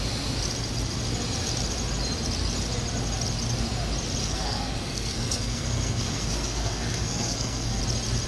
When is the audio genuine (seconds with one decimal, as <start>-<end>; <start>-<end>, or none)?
0.0-4.2; 7.8-8.3